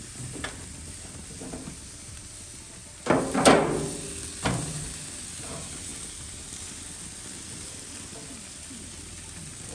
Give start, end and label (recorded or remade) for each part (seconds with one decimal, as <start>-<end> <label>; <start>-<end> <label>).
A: 0.0-9.7 recorded